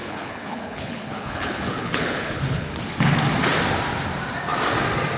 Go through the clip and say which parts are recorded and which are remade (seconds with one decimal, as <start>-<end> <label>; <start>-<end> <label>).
0.0-2.8 remade; 2.8-5.2 recorded